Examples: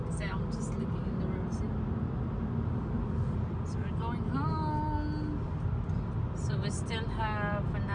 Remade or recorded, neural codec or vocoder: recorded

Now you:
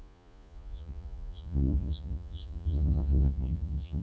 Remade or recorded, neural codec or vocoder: remade, vocoder, Vocos